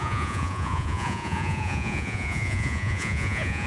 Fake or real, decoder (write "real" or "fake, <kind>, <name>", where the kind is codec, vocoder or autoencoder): fake, vocoder, Vocos